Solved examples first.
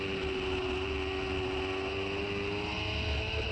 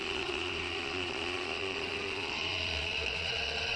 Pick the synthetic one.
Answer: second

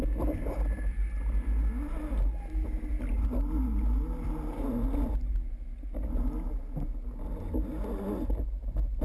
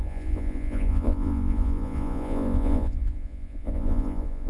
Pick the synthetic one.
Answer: second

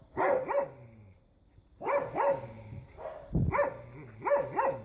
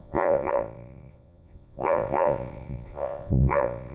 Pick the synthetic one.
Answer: second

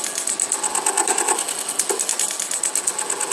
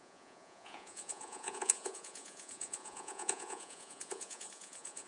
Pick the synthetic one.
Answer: second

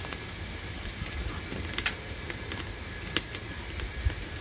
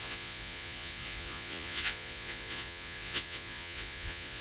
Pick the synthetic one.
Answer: second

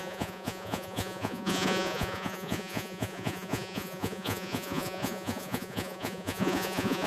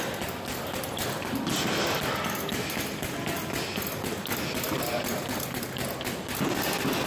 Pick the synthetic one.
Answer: first